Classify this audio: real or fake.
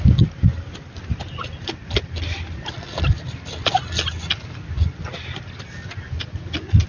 real